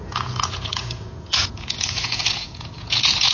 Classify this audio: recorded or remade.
remade